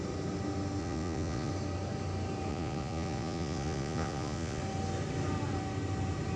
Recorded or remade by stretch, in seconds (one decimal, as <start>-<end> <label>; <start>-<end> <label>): 0.0-0.8 recorded; 0.8-1.5 remade; 1.5-2.5 recorded; 2.5-4.6 remade; 4.6-6.4 recorded